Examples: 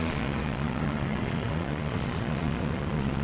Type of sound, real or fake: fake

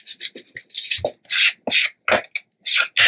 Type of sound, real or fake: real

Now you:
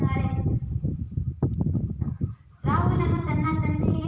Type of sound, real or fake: fake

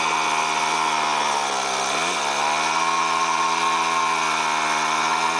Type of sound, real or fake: real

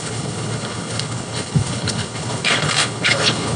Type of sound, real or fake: fake